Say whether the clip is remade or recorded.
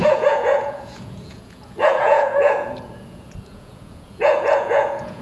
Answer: remade